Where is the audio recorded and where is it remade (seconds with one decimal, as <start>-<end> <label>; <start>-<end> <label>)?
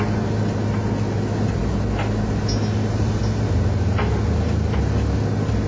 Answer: 0.0-5.7 recorded